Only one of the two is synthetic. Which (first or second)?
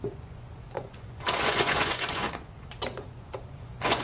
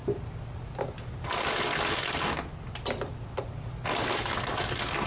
first